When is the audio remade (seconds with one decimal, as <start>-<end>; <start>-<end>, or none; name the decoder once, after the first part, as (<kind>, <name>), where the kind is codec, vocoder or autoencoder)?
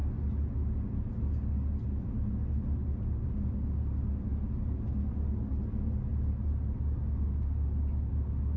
none